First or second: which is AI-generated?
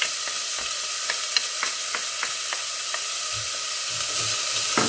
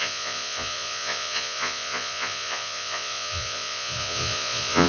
second